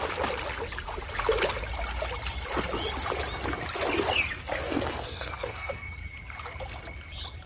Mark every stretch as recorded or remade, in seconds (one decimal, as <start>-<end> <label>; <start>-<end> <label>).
0.0-4.6 recorded; 4.6-5.9 remade; 5.9-7.5 recorded